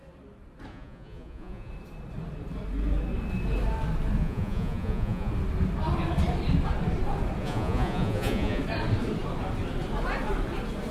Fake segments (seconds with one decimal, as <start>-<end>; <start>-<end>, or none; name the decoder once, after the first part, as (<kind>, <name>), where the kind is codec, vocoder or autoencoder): 0.7-1.7 (vocoder, Vocos); 4.2-5.3; 7.4-8.6